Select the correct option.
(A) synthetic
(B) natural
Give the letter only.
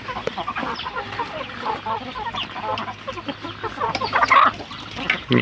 B